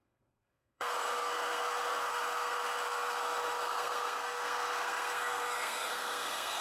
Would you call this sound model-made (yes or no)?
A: yes